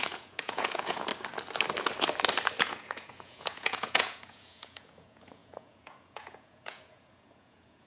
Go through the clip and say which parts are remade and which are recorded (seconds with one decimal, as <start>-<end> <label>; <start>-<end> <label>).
0.0-1.1 remade; 1.1-2.6 recorded; 2.6-7.9 remade